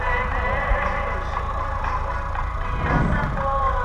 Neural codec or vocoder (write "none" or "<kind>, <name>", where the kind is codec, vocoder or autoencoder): none